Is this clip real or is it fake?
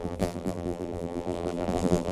fake